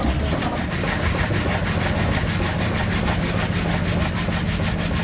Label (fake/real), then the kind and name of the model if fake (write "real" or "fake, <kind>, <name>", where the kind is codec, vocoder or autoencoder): real